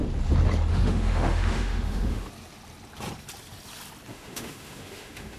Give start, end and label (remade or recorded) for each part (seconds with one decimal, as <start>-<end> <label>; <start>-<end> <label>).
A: 0.0-0.7 recorded; 0.7-2.3 remade; 2.3-4.1 recorded; 4.1-5.4 remade